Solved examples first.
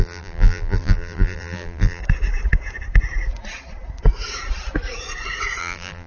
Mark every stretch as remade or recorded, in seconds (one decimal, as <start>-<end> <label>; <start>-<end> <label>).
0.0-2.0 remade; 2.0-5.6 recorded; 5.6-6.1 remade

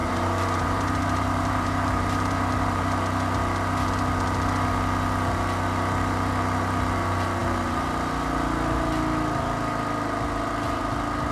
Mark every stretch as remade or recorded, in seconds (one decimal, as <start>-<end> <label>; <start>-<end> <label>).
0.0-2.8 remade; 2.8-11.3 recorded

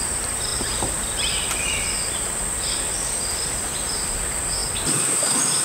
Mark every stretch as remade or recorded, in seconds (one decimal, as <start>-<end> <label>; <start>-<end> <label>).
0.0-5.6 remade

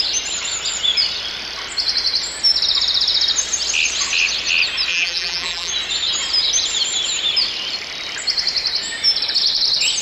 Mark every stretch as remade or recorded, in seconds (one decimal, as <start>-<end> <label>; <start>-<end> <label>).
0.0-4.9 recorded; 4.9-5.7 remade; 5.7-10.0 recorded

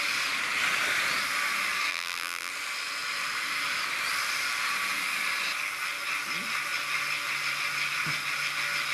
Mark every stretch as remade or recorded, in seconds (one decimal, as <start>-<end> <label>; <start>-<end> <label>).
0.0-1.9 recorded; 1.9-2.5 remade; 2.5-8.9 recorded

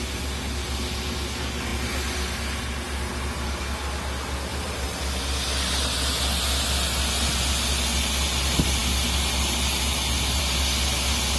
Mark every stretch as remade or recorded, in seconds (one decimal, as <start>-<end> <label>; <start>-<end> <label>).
0.0-4.5 recorded; 4.5-5.0 remade; 5.0-11.4 recorded

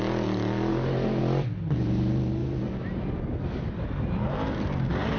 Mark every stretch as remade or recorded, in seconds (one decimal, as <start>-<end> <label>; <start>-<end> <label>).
0.0-0.7 recorded; 0.7-1.2 remade; 1.2-5.2 recorded